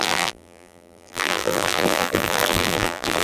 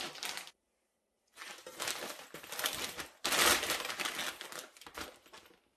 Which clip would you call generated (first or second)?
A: first